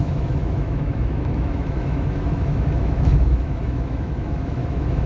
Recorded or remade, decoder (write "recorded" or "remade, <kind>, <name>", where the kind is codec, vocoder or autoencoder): remade, autoencoder, DAC-VAE